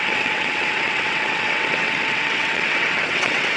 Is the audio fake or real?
fake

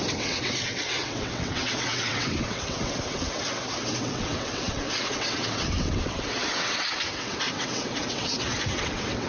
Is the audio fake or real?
fake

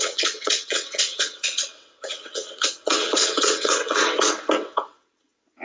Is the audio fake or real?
fake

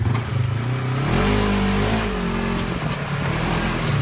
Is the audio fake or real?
real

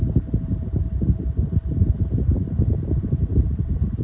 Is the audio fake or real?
real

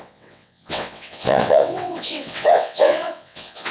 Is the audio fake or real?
fake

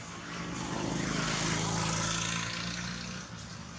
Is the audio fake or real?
real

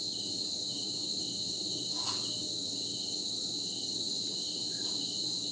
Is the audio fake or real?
fake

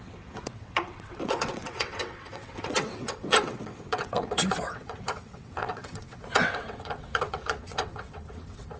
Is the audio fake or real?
fake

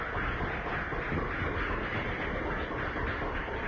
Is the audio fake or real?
real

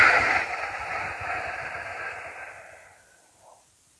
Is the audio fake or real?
real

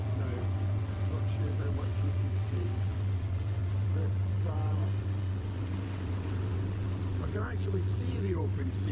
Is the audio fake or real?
fake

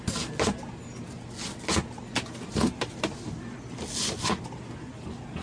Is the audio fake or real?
real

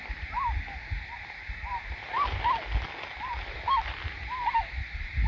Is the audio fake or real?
real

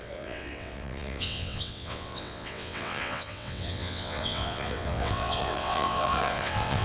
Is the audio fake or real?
fake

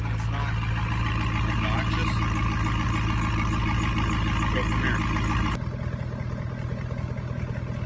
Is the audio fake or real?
real